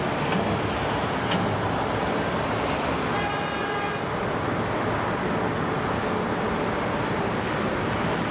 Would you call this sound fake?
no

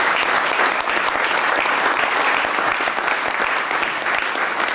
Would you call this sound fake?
no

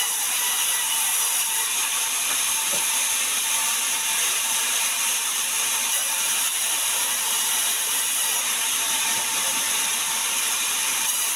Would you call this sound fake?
yes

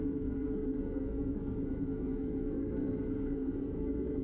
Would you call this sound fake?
yes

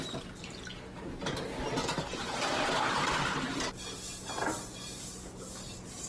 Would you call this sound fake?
no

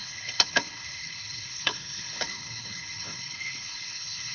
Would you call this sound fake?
yes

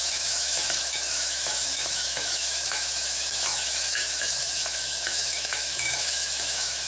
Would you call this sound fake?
yes